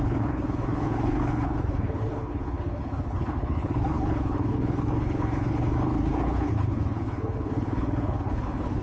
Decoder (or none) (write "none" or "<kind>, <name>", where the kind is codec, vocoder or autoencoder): codec, HILCodec